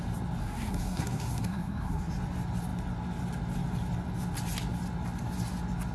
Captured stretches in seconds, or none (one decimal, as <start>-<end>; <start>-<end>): 0.0-0.4; 2.1-5.9